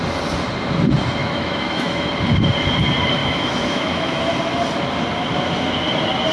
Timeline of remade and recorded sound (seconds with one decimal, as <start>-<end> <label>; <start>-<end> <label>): 0.0-1.2 recorded; 1.2-2.1 remade; 2.1-3.2 recorded; 3.2-4.2 remade; 4.2-6.3 recorded